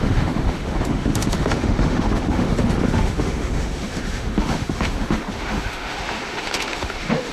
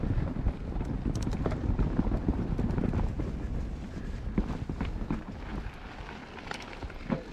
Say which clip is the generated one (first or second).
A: first